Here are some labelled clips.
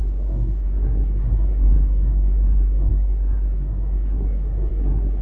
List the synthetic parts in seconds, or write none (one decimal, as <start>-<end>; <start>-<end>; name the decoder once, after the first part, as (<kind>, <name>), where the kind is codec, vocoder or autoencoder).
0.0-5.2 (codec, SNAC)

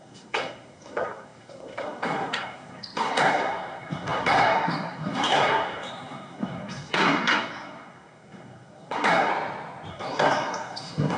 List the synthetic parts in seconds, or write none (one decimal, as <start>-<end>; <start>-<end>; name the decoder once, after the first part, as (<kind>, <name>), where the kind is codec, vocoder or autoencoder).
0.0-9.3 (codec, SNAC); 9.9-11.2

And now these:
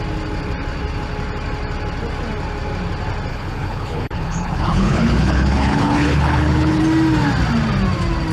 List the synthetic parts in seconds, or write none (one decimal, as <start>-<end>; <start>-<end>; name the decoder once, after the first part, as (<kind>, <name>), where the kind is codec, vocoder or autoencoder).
3.3-6.8 (codec, HILCodec)